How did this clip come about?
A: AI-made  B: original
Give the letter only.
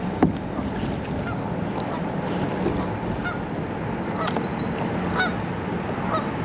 B